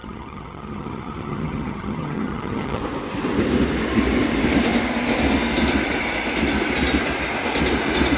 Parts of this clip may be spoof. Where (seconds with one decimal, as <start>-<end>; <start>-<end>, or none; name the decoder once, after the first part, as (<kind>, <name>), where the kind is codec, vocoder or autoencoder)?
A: 0.0-2.8 (vocoder, HiFi-GAN)